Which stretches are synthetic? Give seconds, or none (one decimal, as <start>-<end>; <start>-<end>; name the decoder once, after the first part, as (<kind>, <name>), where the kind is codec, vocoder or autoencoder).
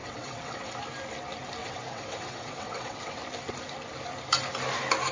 0.0-0.8 (vocoder, WaveNeXt); 1.6-3.2